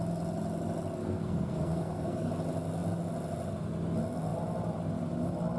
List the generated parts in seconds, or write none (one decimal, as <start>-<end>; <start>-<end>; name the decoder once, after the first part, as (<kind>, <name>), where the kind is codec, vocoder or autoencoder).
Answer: 1.0-2.3 (codec, SNAC)